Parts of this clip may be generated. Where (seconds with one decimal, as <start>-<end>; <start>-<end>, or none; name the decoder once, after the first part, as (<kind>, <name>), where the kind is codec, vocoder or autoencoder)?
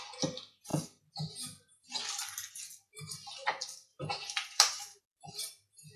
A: 3.9-5.0 (vocoder, BigVGAN v2)